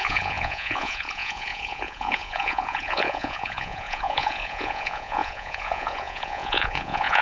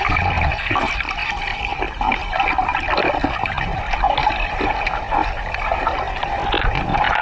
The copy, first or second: first